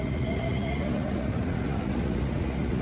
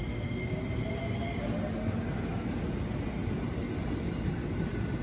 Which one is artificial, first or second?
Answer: first